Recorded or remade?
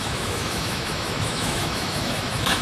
remade